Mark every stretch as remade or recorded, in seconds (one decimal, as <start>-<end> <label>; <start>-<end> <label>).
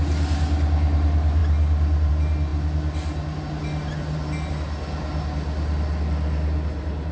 0.0-7.1 recorded